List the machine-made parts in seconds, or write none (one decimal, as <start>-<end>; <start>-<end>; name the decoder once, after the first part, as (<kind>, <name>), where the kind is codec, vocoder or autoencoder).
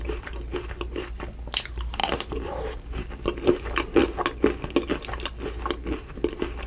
none